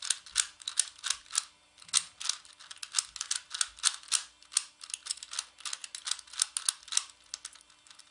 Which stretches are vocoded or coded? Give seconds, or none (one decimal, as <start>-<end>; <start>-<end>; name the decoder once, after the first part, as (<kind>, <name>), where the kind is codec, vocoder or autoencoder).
none